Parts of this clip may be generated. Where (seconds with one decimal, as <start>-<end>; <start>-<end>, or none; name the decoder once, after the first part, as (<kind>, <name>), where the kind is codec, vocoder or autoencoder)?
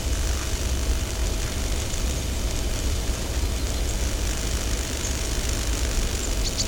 1.2-3.8 (vocoder, BigVGAN v2)